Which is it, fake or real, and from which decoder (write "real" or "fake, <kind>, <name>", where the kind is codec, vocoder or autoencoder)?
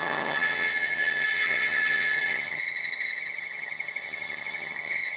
fake, vocoder, HiFi-GAN